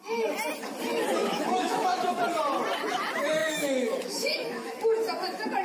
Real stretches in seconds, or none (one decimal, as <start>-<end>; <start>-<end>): 0.0-1.2; 2.2-3.4; 4.7-5.6